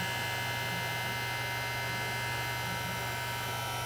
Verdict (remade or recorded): recorded